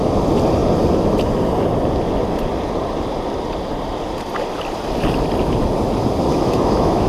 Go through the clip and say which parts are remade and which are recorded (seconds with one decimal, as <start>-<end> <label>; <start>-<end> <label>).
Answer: 0.0-6.3 recorded; 6.3-7.1 remade